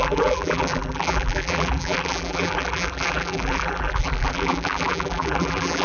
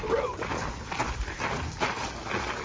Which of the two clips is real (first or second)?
second